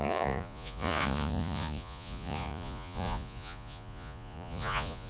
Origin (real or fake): fake